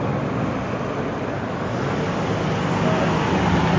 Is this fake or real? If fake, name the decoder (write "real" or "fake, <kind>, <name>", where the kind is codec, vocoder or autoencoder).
real